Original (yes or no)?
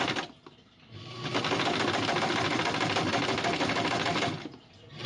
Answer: yes